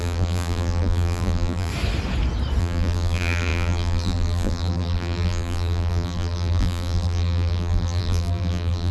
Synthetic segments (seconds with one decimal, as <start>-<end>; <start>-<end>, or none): 0.0-1.7; 2.6-8.9